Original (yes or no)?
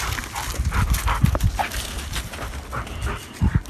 yes